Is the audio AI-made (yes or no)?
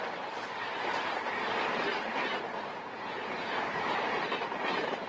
yes